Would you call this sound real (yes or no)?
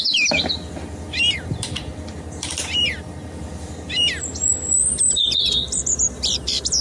no